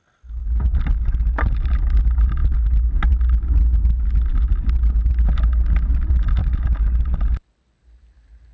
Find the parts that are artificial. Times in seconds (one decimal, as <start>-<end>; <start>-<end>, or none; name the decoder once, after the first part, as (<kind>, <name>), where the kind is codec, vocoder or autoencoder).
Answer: none